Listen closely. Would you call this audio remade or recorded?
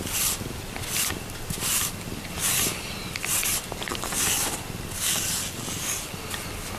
recorded